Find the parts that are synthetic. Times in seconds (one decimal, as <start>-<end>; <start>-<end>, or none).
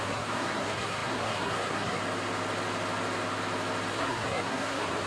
0.0-2.0; 3.9-5.1